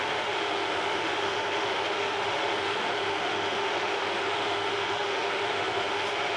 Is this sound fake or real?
fake